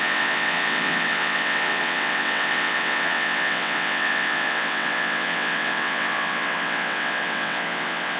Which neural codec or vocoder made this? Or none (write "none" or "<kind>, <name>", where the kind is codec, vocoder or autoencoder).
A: vocoder, WaveNeXt